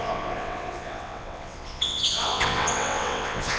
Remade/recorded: remade